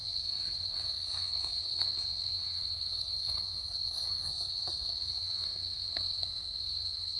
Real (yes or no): no